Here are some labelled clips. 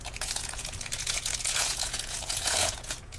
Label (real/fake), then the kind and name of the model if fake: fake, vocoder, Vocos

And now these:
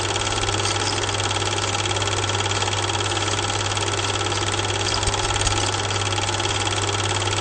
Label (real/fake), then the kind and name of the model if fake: real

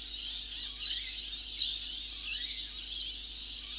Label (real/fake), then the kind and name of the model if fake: real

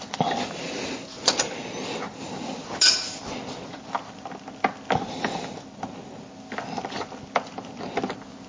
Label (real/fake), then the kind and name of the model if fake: real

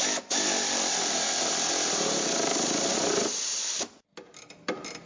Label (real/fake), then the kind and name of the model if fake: real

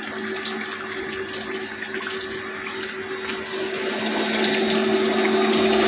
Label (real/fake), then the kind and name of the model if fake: real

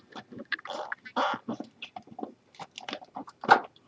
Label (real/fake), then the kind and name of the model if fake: real